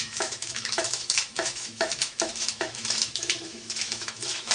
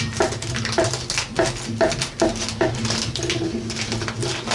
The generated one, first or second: first